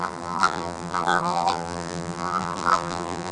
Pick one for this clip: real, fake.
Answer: fake